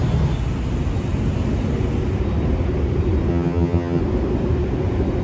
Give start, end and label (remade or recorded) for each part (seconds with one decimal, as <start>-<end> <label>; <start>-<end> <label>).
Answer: 0.0-3.3 recorded; 3.3-4.0 remade; 4.0-5.2 recorded